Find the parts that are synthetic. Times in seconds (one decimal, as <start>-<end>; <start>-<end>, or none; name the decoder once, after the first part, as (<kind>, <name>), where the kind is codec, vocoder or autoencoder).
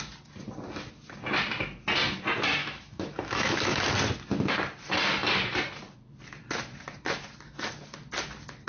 2.6-3.9 (autoencoder, DAC-VAE)